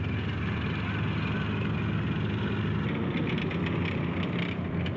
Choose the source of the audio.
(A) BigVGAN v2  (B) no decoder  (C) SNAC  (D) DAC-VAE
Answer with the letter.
B